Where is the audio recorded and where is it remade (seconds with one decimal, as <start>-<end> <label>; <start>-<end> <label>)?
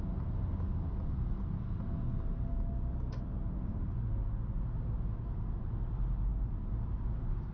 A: 0.0-7.5 recorded